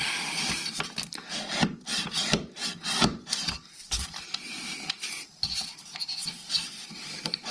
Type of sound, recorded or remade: recorded